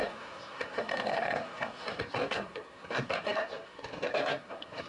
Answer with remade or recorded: remade